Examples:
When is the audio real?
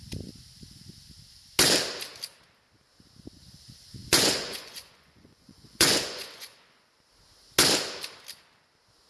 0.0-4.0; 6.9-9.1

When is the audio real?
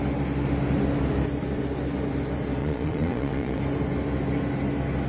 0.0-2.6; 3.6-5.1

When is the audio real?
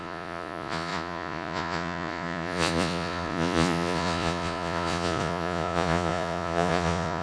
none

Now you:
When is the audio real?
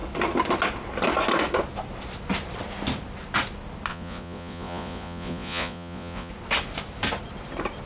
0.0-3.9; 6.3-7.9